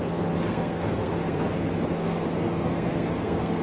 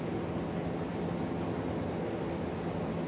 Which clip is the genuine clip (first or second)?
second